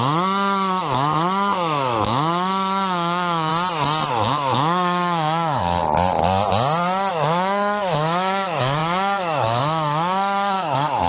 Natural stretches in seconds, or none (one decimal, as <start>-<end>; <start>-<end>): 3.5-4.1; 5.8-7.1